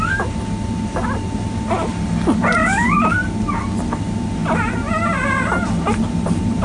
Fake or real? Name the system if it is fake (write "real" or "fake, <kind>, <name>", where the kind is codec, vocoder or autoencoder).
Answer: real